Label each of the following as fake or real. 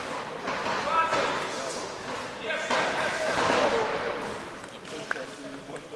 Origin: real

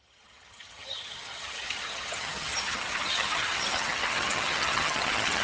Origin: fake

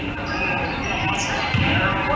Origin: real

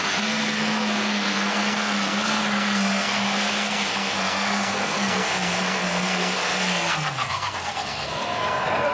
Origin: fake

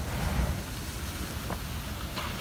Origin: real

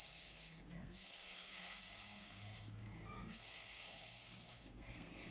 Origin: fake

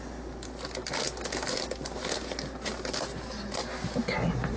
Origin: real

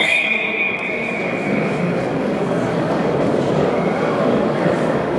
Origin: fake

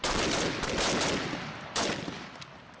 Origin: real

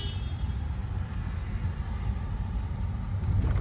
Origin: real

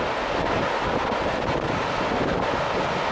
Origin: real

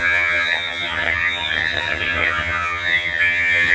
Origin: fake